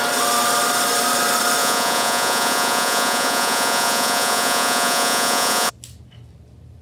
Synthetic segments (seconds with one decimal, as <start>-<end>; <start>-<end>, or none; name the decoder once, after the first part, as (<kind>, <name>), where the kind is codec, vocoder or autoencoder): 1.6-5.7 (vocoder, Vocos)